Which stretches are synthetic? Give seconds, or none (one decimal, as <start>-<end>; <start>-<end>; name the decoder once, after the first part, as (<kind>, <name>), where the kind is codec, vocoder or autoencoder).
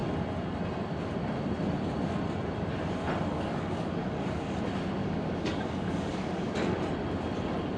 3.3-4.6 (codec, DAC); 5.0-6.8